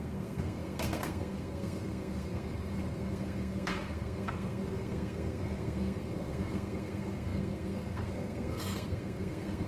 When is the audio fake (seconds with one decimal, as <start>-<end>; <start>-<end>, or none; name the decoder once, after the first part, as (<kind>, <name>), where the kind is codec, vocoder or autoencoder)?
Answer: 0.0-9.7 (codec, SNAC)